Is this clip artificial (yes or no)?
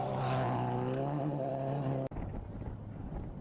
no